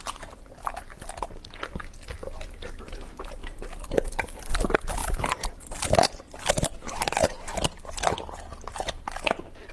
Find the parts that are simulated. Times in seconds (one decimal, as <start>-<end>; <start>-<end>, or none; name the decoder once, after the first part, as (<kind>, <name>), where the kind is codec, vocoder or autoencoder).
0.0-5.0 (vocoder, BigVGAN v2)